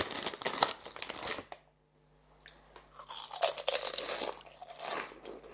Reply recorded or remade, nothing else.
recorded